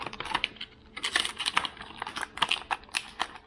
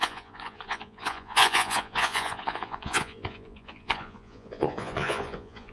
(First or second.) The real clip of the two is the first